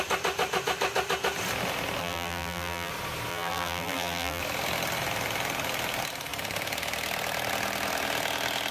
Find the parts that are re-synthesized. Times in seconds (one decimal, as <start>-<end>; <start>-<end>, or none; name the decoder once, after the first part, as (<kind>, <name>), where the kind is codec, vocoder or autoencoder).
2.0-2.9 (vocoder, BigVGAN v2); 3.3-4.4